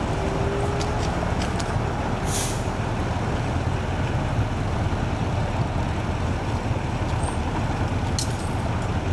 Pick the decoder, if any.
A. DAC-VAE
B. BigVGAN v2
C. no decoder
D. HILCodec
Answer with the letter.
C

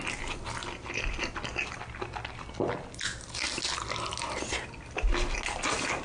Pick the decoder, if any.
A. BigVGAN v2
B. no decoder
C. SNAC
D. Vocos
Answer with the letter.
B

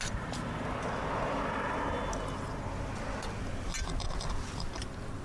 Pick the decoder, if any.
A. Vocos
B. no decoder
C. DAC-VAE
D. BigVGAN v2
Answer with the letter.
B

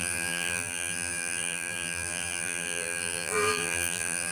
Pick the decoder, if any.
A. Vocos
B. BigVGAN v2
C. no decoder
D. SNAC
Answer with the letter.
B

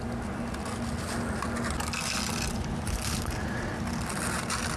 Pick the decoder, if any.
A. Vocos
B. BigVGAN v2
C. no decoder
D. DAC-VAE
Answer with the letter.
C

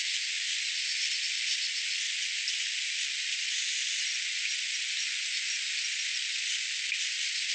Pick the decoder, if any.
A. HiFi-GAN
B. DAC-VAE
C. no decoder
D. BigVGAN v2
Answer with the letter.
C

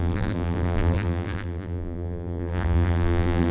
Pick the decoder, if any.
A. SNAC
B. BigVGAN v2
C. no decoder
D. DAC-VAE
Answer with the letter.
B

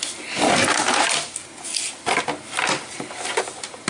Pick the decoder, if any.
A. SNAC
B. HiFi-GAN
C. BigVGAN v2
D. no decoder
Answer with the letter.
D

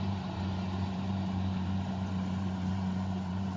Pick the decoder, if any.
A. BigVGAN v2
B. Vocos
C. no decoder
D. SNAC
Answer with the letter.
A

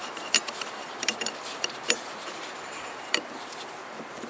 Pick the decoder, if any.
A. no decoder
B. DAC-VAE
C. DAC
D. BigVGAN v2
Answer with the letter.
D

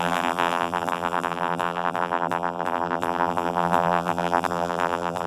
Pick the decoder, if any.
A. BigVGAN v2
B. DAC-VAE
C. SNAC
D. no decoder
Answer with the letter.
A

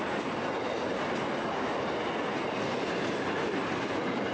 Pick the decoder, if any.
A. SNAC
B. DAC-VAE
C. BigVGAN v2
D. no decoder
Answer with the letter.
D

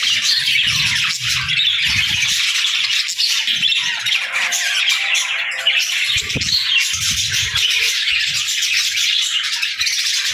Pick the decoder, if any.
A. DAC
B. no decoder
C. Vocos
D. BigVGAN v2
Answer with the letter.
B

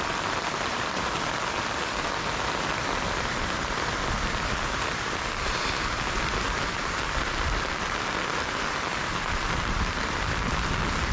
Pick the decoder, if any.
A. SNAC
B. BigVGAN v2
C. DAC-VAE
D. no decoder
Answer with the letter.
D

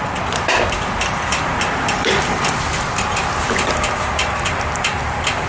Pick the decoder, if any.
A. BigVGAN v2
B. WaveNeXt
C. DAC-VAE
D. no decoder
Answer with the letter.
A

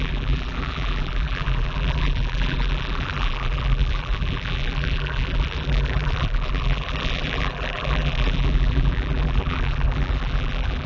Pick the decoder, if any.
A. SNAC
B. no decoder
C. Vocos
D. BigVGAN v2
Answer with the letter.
D